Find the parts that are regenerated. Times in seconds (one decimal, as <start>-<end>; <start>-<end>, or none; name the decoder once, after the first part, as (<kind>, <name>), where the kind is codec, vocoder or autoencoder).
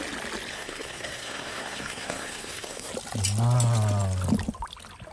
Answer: 0.5-2.9 (codec, SNAC)